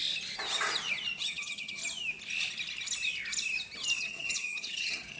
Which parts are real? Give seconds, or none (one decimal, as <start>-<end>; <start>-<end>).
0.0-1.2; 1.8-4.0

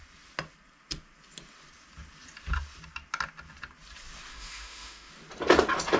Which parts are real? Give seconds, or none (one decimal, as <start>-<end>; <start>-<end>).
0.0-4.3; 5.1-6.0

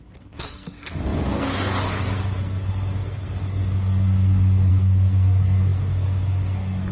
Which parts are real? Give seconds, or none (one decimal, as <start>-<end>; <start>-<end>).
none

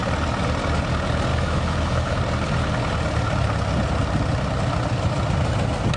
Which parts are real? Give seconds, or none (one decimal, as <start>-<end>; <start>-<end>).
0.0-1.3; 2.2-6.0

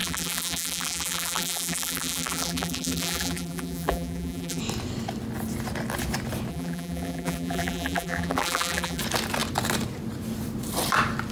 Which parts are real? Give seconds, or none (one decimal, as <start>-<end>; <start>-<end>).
4.6-6.5; 9.0-11.3

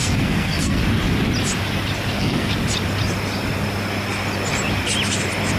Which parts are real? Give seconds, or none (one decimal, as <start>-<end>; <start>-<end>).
0.8-2.1; 2.6-5.6